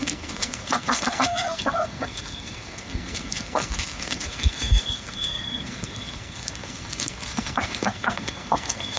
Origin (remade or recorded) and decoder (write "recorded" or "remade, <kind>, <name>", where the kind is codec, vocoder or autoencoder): remade, codec, SNAC